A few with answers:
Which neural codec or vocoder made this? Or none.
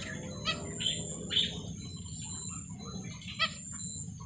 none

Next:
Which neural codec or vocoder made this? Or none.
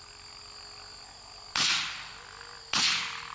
none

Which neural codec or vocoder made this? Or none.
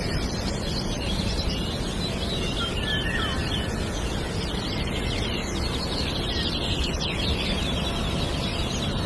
none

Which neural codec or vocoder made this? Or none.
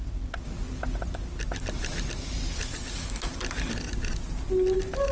none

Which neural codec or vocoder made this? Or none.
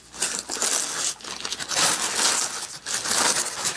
none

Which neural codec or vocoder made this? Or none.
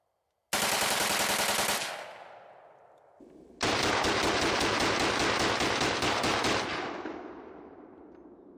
none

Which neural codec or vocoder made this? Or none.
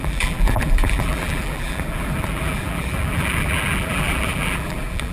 vocoder, BigVGAN v2